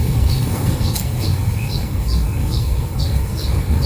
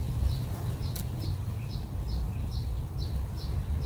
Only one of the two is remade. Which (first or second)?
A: first